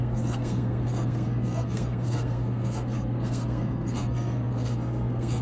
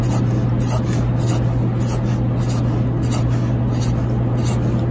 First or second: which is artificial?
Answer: first